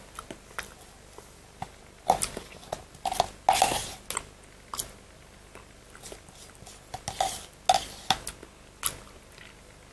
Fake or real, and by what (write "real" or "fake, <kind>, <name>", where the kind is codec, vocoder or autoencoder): real